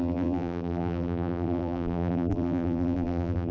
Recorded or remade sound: remade